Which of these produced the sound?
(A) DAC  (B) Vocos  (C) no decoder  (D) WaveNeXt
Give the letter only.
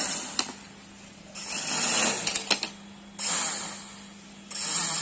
C